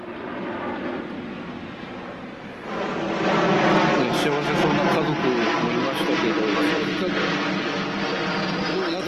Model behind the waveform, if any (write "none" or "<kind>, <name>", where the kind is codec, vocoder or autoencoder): none